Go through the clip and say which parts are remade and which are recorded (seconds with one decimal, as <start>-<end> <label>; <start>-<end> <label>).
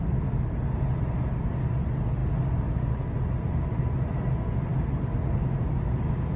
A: 0.0-6.4 recorded